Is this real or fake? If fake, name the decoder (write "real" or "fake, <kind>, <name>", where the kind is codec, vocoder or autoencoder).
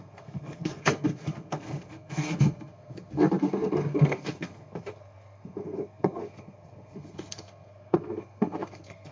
fake, codec, SNAC